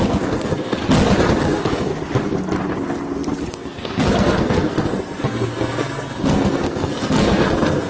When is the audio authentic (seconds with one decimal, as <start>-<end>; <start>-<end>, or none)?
0.8-1.4; 1.9-3.5